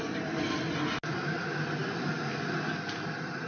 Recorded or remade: recorded